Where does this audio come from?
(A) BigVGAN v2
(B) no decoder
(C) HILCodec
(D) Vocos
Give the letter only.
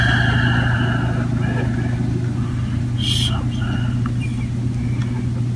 B